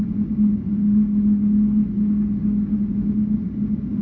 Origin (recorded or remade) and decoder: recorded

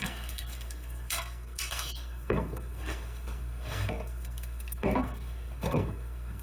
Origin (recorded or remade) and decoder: remade, codec, SNAC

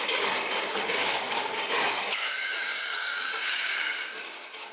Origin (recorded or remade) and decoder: remade, codec, DAC